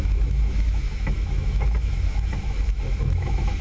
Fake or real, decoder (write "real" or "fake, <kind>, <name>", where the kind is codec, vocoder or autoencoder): fake, autoencoder, DAC-VAE